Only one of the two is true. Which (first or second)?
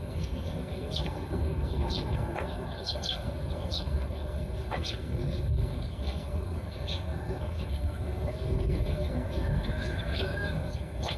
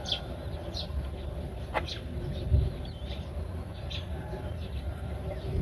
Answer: second